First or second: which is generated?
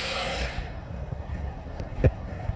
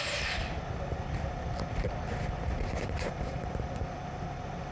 first